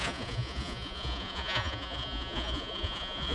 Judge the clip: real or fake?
fake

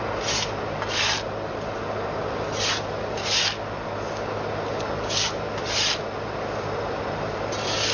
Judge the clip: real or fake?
real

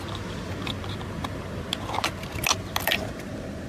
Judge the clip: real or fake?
real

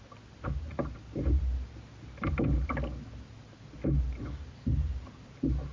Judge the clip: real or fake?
real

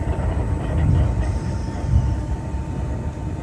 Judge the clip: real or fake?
real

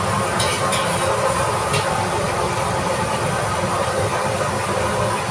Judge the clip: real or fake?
real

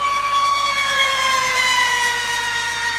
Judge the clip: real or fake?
fake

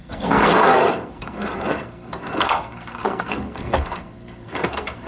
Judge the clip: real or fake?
fake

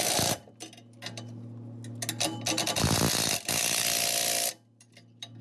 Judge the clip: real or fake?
real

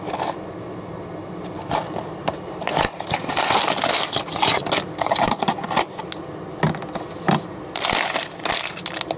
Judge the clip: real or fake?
real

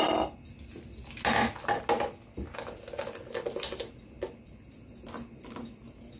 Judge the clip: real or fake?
real